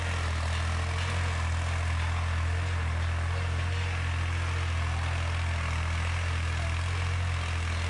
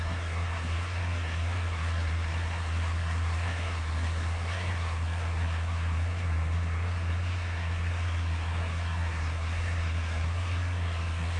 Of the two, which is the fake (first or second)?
second